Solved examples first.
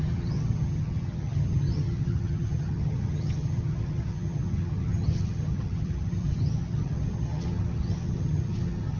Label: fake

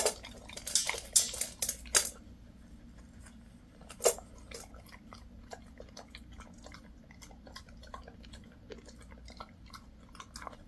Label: real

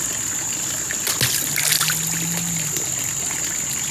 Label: real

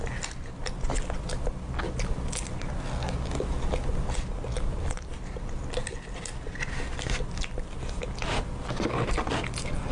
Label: real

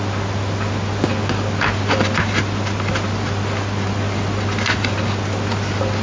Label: real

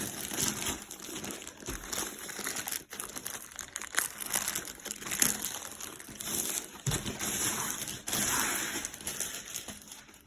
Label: real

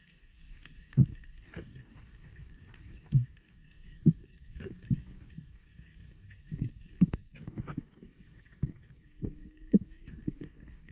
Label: fake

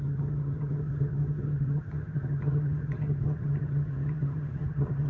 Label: fake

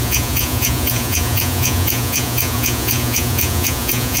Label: fake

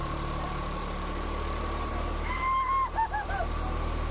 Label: fake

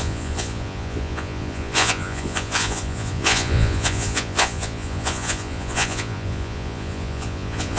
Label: fake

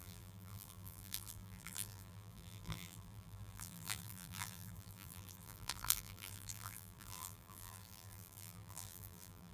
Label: fake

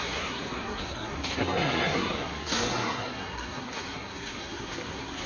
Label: fake